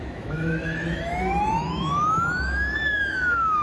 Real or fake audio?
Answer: fake